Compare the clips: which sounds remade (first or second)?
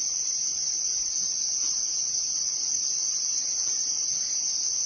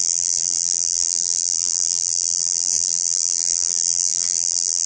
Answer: second